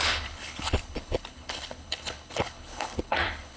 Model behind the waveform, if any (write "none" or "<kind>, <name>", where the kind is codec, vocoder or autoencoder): codec, HILCodec